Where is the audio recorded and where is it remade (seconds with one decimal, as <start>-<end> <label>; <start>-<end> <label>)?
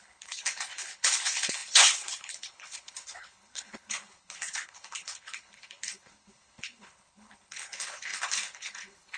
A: 0.0-9.2 remade